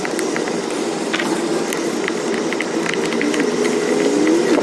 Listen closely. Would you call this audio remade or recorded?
recorded